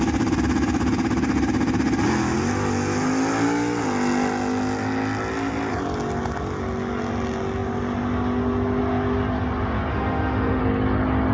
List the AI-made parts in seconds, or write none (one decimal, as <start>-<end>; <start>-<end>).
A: 9.9-10.6